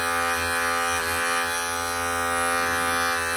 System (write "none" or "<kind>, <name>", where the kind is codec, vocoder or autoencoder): none